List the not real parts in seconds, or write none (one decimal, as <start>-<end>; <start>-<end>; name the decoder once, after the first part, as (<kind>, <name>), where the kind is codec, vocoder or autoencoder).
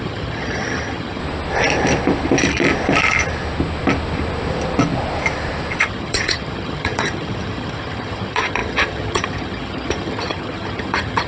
0.0-1.2 (vocoder, HiFi-GAN); 5.8-11.3